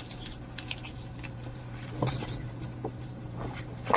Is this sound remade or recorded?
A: remade